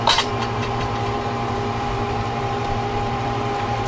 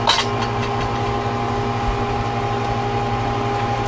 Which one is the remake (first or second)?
first